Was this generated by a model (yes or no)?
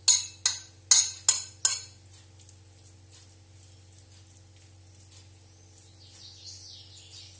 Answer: no